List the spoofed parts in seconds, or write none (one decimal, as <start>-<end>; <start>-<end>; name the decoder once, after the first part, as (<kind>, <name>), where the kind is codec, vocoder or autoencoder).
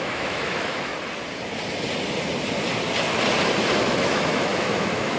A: 0.0-0.9 (autoencoder, DAC-VAE); 3.8-5.2